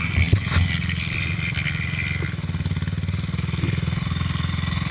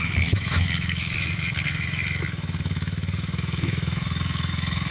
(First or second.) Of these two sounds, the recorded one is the first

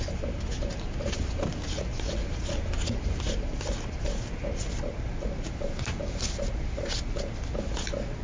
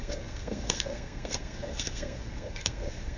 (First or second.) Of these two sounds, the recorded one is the first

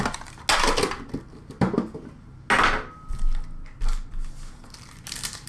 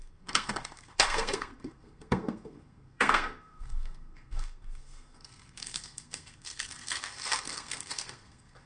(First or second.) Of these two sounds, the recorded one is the first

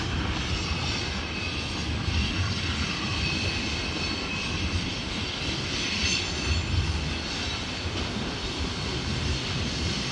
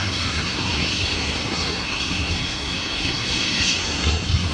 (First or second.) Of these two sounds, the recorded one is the first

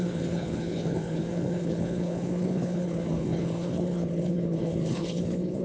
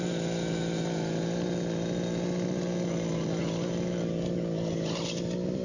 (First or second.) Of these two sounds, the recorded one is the second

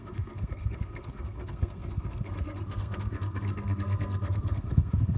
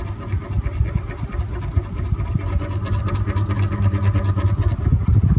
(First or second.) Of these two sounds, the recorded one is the second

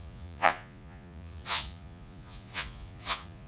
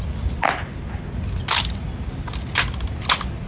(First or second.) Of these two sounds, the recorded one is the second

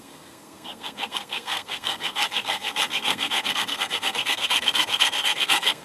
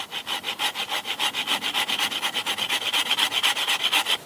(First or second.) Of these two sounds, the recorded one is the second